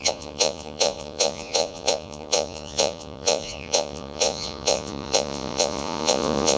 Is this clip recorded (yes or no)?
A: no